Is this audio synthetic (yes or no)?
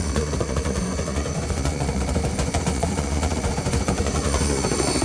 yes